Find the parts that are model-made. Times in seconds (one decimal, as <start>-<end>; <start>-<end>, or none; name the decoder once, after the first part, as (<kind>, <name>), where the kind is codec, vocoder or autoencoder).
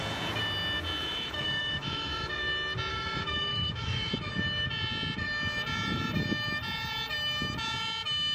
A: 1.0-2.3 (autoencoder, DAC-VAE); 2.9-4.1